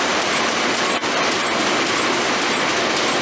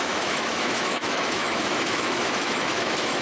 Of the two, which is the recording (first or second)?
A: first